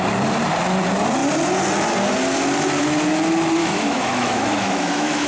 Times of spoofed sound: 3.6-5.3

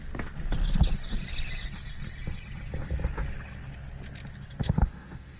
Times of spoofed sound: 4.6-5.4

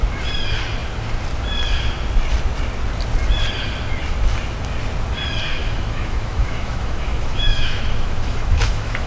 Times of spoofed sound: 5.6-9.1

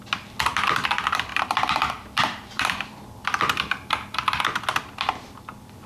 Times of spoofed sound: 1.3-4.4

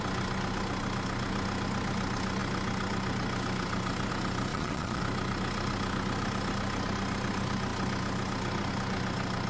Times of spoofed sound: 4.5-5.0

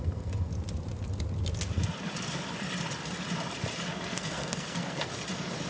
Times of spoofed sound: 0.0-0.5; 3.9-5.1

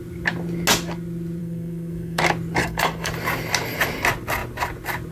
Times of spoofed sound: 1.4-2.2; 2.6-3.1